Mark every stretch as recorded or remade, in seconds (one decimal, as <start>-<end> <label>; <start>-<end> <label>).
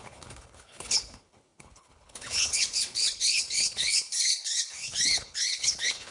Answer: 0.0-6.1 remade